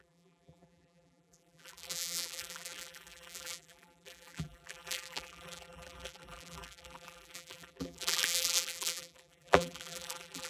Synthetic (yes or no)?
yes